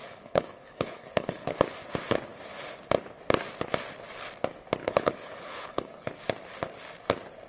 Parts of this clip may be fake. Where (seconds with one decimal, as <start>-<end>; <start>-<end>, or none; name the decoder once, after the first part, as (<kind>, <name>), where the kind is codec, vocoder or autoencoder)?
0.0-1.5 (codec, HILCodec); 4.8-6.1